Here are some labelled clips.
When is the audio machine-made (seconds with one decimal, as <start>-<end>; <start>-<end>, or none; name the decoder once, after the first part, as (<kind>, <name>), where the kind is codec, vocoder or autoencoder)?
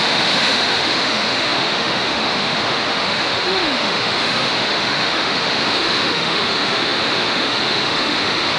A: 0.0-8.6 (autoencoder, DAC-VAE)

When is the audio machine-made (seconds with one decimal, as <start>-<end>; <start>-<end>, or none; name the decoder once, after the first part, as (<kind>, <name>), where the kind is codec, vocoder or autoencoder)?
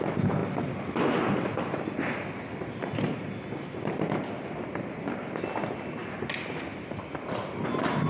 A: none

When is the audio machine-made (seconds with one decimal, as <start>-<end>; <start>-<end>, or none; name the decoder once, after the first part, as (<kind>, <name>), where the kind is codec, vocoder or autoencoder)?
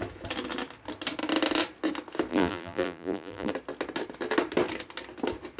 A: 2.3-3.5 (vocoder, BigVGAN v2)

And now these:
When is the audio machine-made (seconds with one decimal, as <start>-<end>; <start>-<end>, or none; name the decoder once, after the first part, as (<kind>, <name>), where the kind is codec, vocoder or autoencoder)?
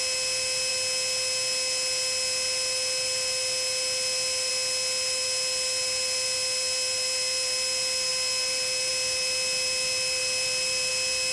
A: none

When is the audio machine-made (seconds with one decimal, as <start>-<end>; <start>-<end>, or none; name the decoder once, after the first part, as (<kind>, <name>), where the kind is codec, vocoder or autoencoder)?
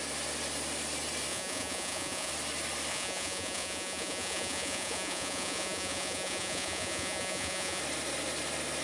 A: 1.3-2.3 (vocoder, Vocos); 2.9-7.8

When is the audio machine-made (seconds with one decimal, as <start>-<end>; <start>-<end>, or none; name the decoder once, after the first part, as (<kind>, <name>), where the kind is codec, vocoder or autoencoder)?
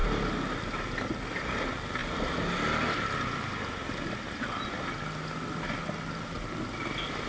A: 2.0-2.5 (vocoder, BigVGAN v2)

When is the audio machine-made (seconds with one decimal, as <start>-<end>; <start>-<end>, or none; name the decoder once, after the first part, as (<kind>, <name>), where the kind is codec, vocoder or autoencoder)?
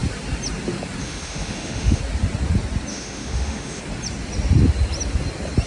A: 1.0-2.0 (autoencoder, DAC-VAE); 2.9-3.8